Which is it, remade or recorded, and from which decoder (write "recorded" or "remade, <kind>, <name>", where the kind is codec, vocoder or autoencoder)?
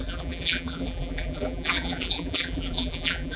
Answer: remade, vocoder, BigVGAN v2